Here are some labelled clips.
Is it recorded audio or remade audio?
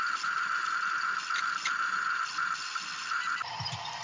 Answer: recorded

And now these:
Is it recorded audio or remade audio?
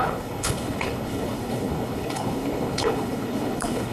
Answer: remade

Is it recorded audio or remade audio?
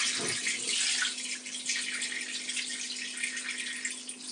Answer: recorded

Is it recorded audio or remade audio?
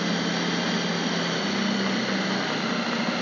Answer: recorded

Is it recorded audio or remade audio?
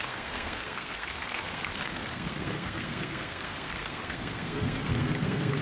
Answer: remade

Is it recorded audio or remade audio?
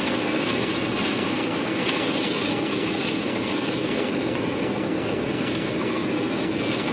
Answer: remade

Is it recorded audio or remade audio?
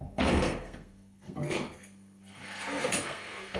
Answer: remade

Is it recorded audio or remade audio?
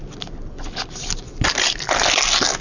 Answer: recorded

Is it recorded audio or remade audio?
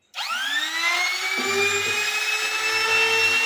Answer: recorded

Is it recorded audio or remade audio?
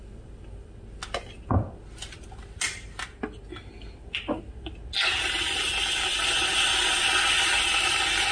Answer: recorded